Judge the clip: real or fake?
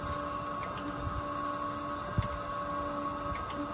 real